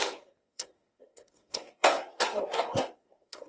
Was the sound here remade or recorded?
remade